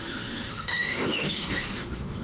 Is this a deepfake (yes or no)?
yes